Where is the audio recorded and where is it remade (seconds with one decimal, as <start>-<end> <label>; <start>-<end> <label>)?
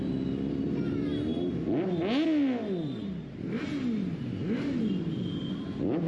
0.0-6.1 recorded